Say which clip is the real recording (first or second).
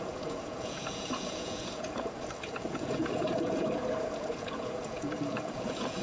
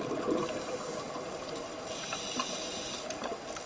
second